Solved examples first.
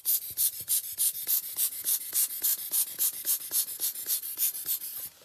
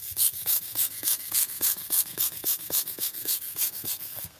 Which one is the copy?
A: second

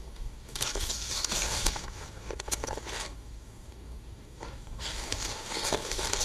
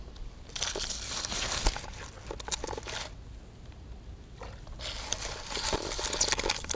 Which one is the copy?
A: first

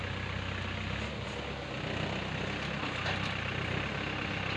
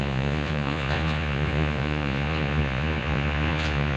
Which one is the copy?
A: second